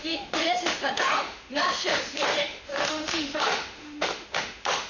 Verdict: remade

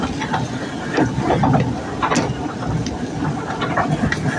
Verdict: recorded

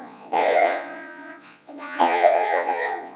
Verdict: remade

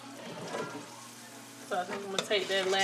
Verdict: recorded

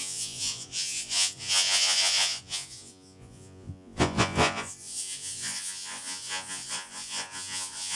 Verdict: remade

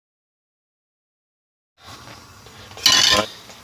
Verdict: recorded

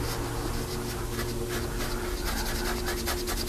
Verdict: recorded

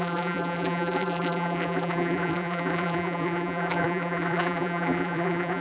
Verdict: remade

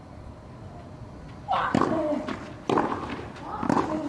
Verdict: recorded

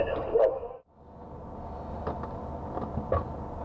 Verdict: recorded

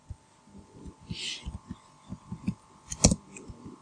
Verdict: recorded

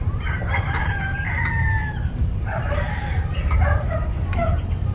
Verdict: remade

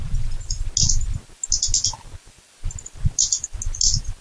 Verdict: recorded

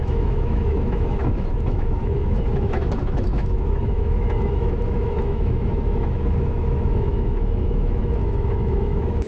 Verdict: remade